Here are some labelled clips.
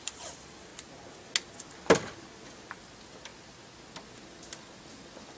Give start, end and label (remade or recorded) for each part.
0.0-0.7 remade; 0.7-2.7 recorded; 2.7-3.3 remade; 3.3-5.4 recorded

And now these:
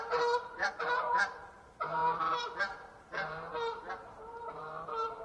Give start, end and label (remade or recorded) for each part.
0.0-2.0 remade; 2.0-2.6 recorded; 2.6-3.5 remade; 3.5-4.6 recorded; 4.6-5.2 remade

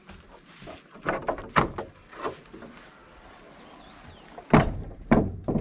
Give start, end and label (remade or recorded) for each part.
0.0-1.2 remade; 1.2-4.6 recorded; 4.6-5.6 remade